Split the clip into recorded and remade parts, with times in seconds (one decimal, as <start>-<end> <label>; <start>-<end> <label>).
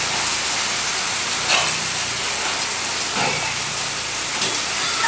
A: 0.0-5.1 recorded